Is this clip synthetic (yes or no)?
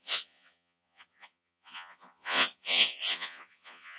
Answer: yes